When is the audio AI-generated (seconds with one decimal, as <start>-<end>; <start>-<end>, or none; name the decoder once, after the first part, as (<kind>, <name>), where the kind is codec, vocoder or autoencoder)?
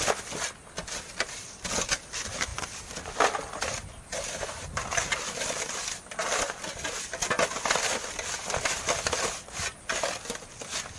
none